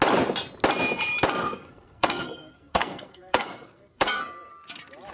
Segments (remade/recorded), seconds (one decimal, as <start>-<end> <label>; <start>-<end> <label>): 0.0-1.4 recorded; 1.4-4.5 remade; 4.5-5.1 recorded